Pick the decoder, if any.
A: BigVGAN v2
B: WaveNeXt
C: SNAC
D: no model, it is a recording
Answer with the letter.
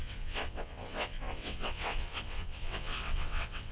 B